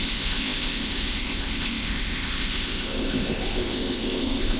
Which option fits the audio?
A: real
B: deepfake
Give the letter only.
B